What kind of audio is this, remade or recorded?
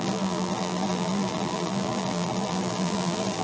remade